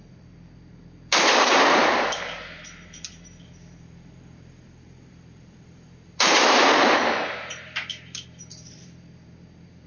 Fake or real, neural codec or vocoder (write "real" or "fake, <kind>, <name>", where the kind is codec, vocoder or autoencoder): fake, vocoder, BigVGAN v2